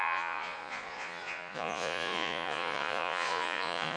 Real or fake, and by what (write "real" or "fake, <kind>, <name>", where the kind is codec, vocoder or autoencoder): fake, vocoder, Vocos